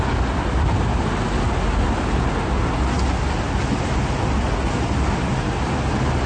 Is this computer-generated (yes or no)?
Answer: no